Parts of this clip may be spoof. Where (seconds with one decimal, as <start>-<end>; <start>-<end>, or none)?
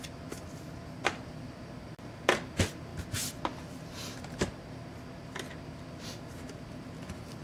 none